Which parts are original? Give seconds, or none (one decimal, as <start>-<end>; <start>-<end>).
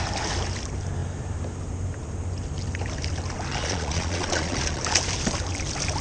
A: 0.0-3.5; 4.8-6.0